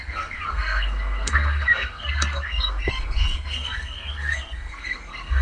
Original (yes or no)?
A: no